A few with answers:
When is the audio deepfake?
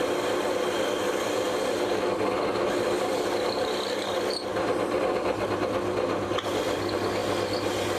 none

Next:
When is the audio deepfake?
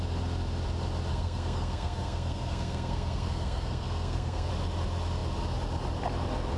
1.1-4.5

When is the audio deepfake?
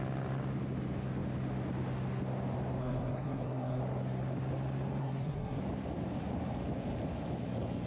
2.8-3.8; 5.0-5.6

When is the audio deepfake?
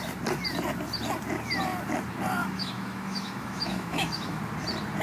2.4-4.4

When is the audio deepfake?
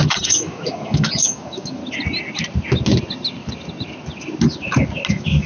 0.0-1.8; 5.1-5.5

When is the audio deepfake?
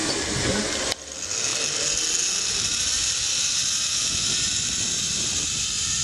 none